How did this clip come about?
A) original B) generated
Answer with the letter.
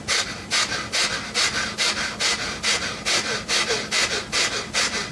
A